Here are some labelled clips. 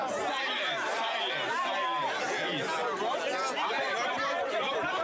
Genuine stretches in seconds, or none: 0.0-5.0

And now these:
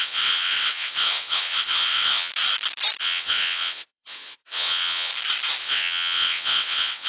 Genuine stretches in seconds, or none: 2.3-3.0; 5.1-5.6

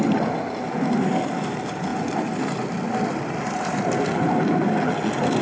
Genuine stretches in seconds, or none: 0.0-5.4

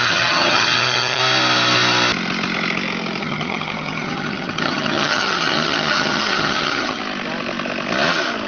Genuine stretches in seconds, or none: 1.2-3.2; 7.0-8.5

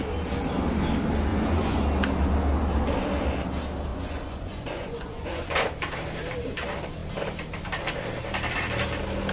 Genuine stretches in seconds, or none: 0.0-1.3; 1.8-3.9; 5.5-9.3